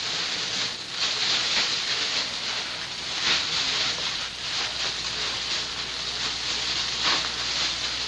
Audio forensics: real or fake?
real